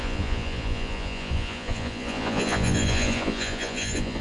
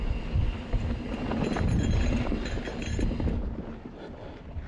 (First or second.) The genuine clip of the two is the second